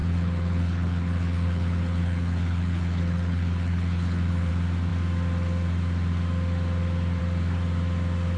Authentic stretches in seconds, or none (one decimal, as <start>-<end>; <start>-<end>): 4.5-8.4